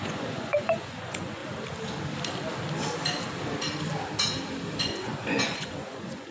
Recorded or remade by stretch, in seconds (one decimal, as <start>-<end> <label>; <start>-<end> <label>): 0.0-1.4 remade; 1.4-4.8 recorded; 4.8-6.3 remade